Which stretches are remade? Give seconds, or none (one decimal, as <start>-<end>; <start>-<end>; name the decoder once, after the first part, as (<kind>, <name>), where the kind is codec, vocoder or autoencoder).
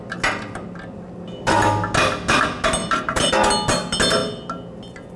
2.8-3.3 (vocoder, BigVGAN v2)